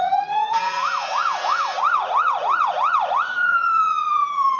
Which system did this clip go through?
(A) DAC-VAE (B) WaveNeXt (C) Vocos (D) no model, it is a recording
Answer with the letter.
C